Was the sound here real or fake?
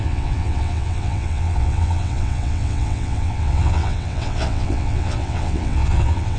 fake